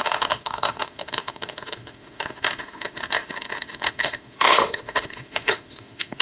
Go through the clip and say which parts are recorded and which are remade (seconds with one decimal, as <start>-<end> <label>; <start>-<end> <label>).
0.0-6.2 remade